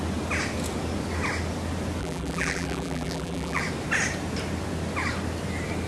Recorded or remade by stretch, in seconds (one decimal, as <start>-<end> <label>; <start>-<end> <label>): 0.0-2.0 recorded; 2.0-3.6 remade; 3.6-5.9 recorded